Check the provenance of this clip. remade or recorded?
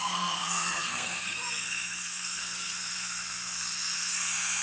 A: remade